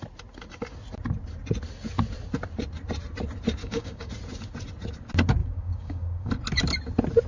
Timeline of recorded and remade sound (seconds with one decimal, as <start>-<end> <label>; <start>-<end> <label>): 0.0-3.6 recorded; 3.6-4.1 remade; 4.1-5.4 recorded; 5.4-6.3 remade; 6.3-7.3 recorded